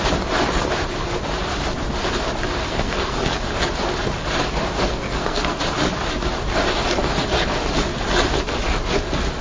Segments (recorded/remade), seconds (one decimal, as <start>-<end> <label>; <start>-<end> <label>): 0.0-2.6 recorded; 2.6-3.4 remade; 3.4-4.9 recorded; 4.9-5.6 remade; 5.6-9.4 recorded